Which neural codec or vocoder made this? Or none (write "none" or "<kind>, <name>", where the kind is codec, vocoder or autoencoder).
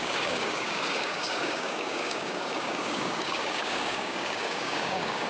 codec, DAC